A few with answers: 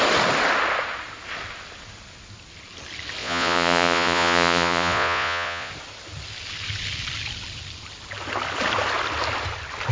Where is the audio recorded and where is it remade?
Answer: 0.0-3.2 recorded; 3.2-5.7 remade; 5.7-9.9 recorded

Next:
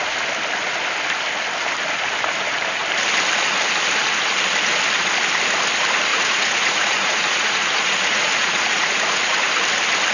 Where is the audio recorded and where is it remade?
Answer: 0.0-6.1 recorded; 6.1-9.5 remade; 9.5-10.1 recorded